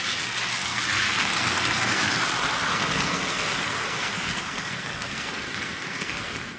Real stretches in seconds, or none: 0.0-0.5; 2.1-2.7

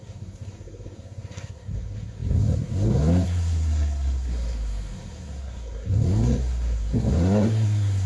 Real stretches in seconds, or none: none

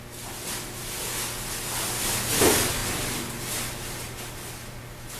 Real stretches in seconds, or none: 0.0-5.2

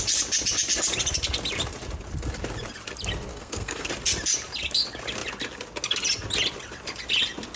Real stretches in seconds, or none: 0.0-3.3; 3.9-7.6

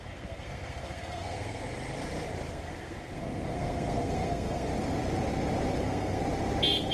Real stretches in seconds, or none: 1.6-2.5; 4.7-5.8; 6.2-6.9

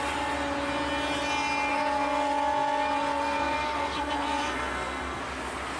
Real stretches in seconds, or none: 0.0-1.7; 5.2-5.8